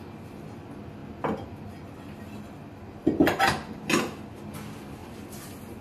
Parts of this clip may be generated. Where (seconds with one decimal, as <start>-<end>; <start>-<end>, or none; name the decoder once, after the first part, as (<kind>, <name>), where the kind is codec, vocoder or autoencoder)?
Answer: none